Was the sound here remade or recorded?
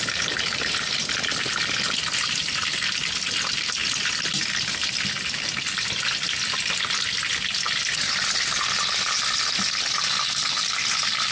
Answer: recorded